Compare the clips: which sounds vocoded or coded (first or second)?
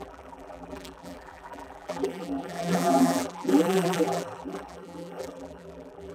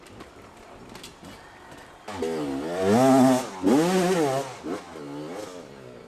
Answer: first